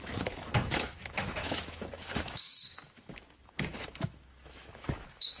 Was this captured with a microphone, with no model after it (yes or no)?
no